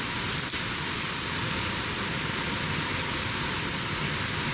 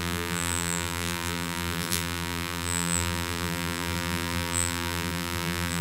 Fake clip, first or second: second